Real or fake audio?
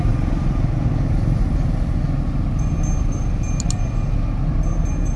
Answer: real